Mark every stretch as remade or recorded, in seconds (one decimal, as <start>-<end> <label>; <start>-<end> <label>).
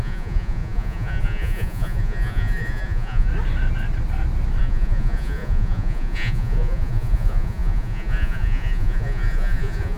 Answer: 0.0-3.3 remade; 3.3-4.6 recorded; 4.6-10.0 remade